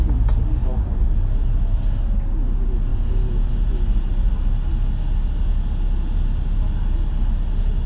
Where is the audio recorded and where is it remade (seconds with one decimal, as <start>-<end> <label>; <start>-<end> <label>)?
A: 0.0-2.9 recorded; 2.9-3.7 remade; 3.7-7.9 recorded